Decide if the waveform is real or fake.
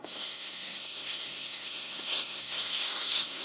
fake